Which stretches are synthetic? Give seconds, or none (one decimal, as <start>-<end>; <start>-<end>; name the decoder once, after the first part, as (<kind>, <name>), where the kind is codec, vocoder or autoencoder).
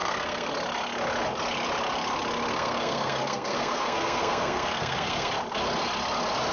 0.0-0.5 (codec, SNAC); 2.5-5.3